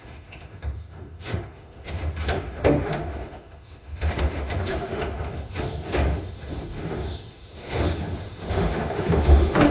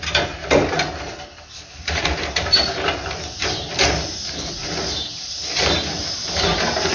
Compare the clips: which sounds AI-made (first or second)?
first